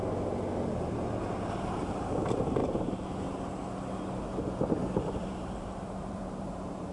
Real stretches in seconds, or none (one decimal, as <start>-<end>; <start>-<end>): 0.0-2.6; 3.2-5.2